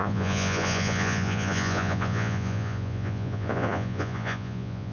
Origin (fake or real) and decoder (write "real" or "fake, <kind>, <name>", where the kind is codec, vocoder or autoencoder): fake, vocoder, Vocos